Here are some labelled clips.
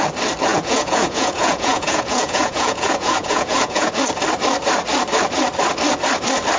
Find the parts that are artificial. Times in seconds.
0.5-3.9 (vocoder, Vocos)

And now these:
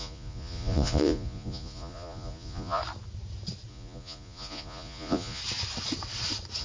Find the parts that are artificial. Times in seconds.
0.0-2.8 (vocoder, Vocos); 3.7-5.4

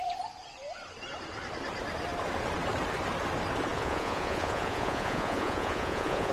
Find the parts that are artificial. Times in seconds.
3.7-6.3 (vocoder, Vocos)